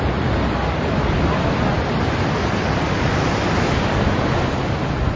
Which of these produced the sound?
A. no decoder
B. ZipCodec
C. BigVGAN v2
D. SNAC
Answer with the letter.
A